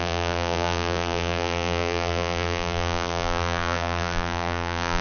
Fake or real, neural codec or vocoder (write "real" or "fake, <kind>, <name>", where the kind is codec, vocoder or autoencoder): fake, vocoder, BigVGAN v2